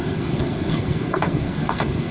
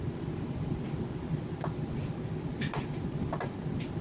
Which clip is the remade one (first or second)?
first